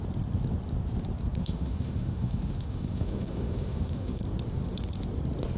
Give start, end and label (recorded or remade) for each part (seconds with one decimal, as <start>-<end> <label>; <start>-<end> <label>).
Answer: 0.0-1.4 recorded; 1.4-4.2 remade; 4.2-5.6 recorded